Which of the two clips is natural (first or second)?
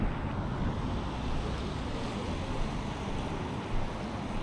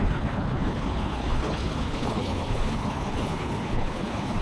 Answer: first